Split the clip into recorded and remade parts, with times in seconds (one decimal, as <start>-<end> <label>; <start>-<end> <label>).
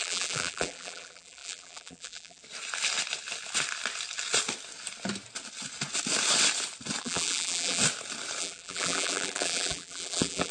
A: 0.0-2.4 remade; 2.4-7.0 recorded; 7.0-7.8 remade; 7.8-8.4 recorded; 8.4-10.5 remade